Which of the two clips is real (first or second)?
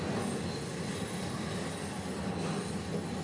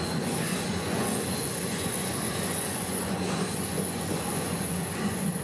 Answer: first